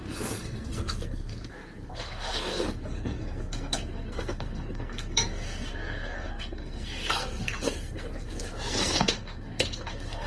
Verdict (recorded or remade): remade